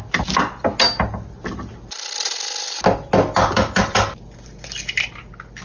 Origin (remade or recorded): recorded